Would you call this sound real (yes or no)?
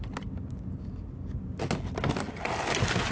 yes